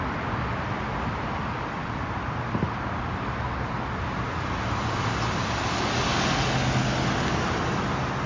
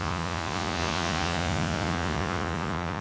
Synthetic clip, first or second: second